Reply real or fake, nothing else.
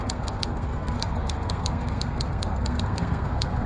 fake